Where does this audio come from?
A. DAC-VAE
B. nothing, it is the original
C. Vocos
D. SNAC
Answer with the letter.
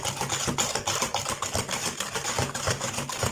B